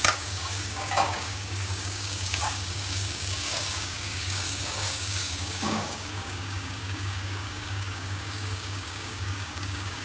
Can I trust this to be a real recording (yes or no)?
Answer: no